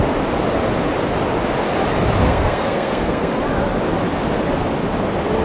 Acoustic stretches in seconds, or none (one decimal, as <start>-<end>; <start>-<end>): 0.0-2.2; 3.3-5.4